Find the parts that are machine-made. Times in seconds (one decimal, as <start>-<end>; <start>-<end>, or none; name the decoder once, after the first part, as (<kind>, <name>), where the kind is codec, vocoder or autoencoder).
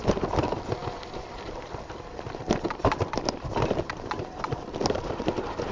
3.5-5.7 (vocoder, BigVGAN v2)